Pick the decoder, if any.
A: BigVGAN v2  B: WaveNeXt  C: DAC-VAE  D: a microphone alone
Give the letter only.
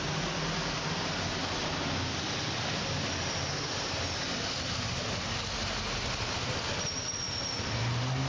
D